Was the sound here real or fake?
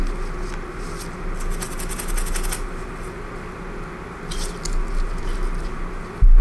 real